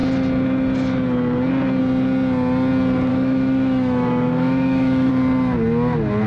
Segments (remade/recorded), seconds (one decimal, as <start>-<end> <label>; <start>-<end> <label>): 0.0-3.1 recorded; 3.1-5.1 remade; 5.1-6.3 recorded

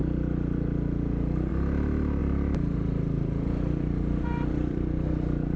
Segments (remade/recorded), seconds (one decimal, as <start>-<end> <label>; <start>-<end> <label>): 0.0-2.2 recorded; 2.2-5.6 remade